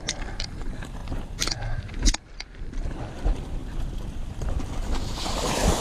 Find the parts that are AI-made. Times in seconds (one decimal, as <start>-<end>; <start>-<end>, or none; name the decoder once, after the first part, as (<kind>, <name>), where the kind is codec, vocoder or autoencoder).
none